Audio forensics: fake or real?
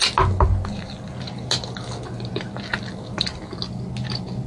real